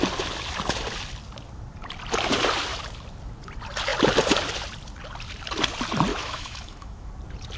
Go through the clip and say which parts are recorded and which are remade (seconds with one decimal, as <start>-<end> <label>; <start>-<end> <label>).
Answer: 0.0-6.1 recorded; 6.1-7.1 remade; 7.1-7.6 recorded